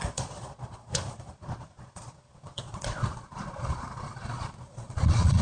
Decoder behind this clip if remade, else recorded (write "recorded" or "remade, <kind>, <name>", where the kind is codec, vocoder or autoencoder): remade, vocoder, Vocos